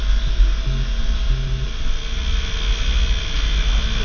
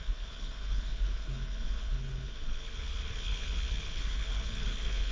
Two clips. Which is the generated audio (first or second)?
second